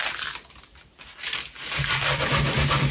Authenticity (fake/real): real